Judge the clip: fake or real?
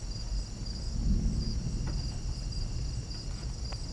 real